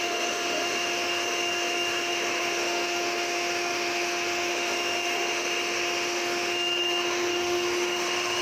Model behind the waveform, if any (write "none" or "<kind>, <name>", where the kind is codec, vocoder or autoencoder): autoencoder, DAC-VAE